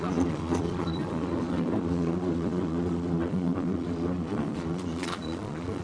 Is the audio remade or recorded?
remade